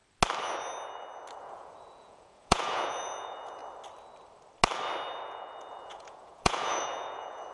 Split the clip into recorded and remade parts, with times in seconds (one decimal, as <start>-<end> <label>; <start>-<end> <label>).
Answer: 0.0-1.4 recorded; 1.4-3.6 remade; 3.6-5.2 recorded; 5.2-7.5 remade